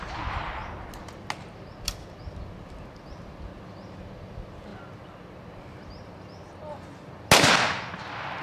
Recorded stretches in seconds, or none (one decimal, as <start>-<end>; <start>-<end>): 0.0-8.4